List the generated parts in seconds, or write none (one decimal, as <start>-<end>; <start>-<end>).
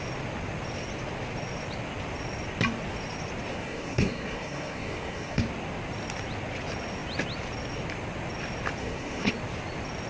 3.5-5.4; 8.8-9.3